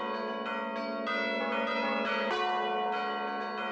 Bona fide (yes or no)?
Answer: yes